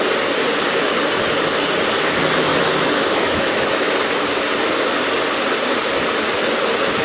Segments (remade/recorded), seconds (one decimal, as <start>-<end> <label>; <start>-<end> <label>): 0.0-2.5 recorded; 2.5-3.9 remade; 3.9-7.0 recorded